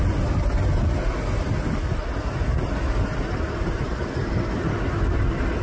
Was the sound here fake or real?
real